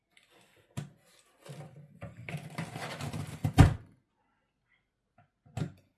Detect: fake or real real